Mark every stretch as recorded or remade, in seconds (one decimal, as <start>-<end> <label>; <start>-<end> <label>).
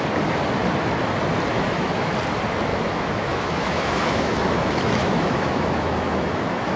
0.0-1.5 recorded; 1.5-2.1 remade; 2.1-2.7 recorded; 2.7-6.8 remade